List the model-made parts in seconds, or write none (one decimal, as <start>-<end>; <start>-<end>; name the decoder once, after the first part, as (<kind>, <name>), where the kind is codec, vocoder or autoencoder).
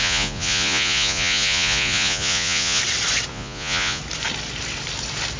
0.0-2.8 (vocoder, Vocos); 3.3-4.0